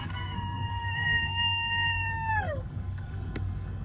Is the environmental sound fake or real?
fake